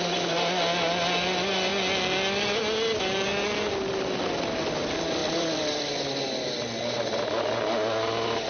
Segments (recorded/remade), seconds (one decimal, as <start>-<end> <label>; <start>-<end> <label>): 0.0-5.2 recorded; 5.2-5.9 remade; 5.9-8.5 recorded